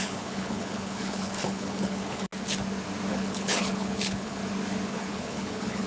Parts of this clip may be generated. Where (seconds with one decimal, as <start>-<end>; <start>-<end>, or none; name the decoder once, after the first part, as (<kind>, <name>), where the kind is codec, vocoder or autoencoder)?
0.0-2.3 (codec, HILCodec); 3.1-4.4; 4.9-5.9